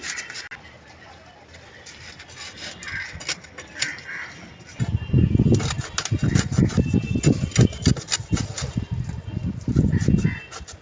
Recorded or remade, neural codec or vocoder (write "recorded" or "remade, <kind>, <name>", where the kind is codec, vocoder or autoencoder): recorded